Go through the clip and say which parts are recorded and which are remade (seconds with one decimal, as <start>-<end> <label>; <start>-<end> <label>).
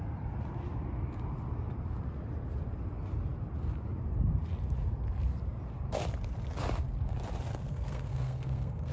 0.0-7.6 recorded; 7.6-8.9 remade